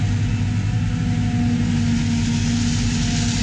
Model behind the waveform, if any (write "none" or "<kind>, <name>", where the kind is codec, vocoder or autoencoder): none